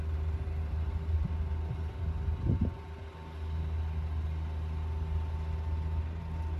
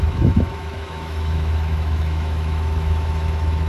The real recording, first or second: first